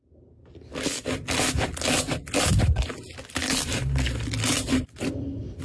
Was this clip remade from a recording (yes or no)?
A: no